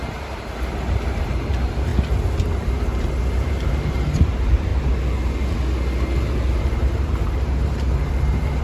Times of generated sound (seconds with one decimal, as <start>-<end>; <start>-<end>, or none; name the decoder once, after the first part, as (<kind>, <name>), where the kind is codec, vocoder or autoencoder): 0.0-1.9 (vocoder, BigVGAN v2); 3.0-4.7; 6.6-8.6